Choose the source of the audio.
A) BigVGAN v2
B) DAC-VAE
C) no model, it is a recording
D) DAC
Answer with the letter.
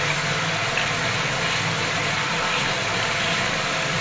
C